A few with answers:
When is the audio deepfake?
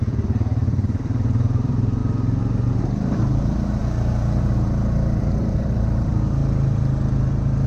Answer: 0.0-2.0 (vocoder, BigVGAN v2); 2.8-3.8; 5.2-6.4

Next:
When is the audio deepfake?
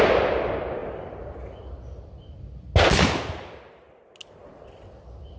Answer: none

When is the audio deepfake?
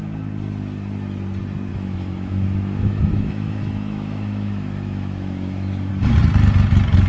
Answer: 1.7-5.9 (autoencoder, DAC-VAE)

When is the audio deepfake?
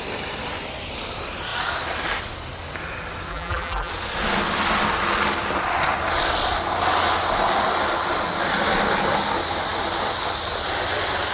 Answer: 3.3-3.9 (vocoder, BigVGAN v2)